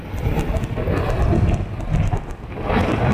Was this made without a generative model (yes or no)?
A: yes